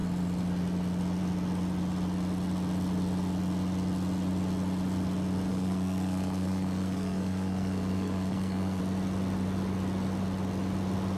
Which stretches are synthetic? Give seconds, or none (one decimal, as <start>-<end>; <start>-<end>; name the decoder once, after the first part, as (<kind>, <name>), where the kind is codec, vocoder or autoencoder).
5.5-8.8 (codec, SNAC)